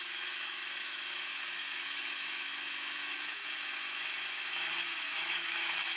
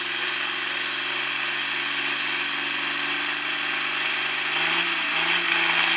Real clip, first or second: second